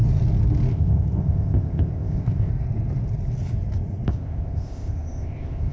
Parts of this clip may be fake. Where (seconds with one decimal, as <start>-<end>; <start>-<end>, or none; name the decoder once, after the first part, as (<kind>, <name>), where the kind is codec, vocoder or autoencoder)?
0.7-2.5 (codec, ZipCodec); 4.1-5.7